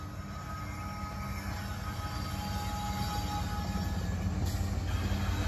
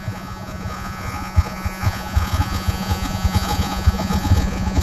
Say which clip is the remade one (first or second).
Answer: second